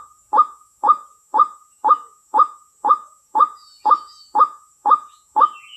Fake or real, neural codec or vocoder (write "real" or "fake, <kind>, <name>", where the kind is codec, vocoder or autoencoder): fake, vocoder, Vocos